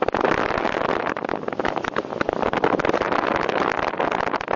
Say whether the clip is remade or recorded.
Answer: recorded